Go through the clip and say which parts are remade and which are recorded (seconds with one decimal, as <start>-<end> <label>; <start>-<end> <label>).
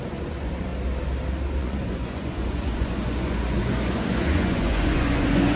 0.0-0.7 remade; 0.7-1.6 recorded; 1.6-5.5 remade